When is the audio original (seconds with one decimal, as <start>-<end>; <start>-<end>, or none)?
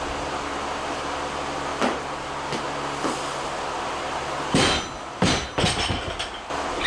0.0-6.9